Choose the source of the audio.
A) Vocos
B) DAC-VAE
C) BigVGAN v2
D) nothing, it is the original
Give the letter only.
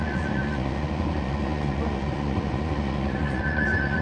A